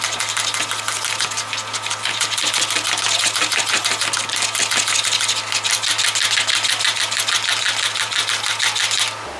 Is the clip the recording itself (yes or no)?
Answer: yes